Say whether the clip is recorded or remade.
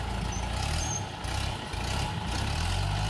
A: recorded